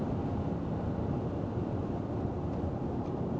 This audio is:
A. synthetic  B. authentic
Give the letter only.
B